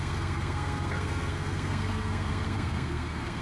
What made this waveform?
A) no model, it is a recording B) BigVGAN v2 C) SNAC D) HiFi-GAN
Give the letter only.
C